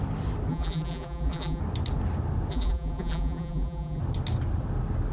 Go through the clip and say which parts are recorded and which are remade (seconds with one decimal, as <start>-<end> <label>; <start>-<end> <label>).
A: 0.0-0.5 recorded; 0.5-1.6 remade; 1.6-2.5 recorded; 2.5-4.0 remade; 4.0-5.1 recorded